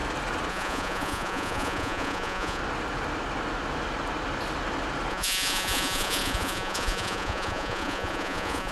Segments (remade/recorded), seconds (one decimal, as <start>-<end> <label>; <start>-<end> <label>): 0.0-0.5 recorded; 0.5-2.6 remade; 2.6-5.1 recorded; 5.1-8.7 remade